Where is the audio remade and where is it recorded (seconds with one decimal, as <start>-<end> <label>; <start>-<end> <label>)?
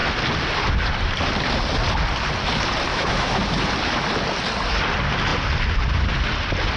0.0-2.9 recorded; 2.9-3.4 remade; 3.4-6.8 recorded